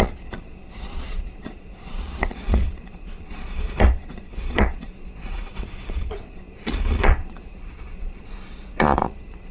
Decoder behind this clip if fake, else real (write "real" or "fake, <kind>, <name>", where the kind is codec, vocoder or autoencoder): fake, vocoder, Vocos